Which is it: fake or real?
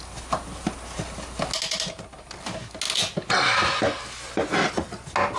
real